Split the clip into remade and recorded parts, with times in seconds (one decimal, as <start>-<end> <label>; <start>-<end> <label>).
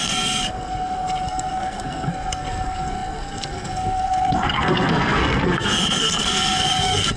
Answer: 0.0-7.2 remade